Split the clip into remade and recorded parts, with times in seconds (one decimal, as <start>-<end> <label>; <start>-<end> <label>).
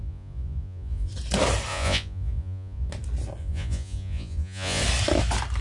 0.0-1.1 remade; 1.1-1.7 recorded; 1.7-2.9 remade; 2.9-3.4 recorded; 3.4-4.8 remade; 4.8-5.6 recorded